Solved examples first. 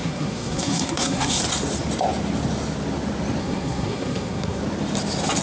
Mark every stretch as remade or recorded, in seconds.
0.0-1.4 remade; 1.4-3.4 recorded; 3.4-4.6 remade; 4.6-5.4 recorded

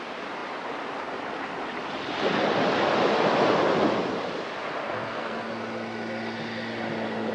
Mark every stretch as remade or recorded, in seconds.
0.0-4.8 recorded; 4.8-5.5 remade; 5.5-7.3 recorded